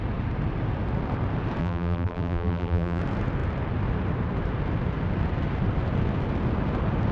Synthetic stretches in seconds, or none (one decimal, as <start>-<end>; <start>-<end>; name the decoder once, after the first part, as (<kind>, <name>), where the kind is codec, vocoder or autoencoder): 1.6-3.0 (vocoder, BigVGAN v2)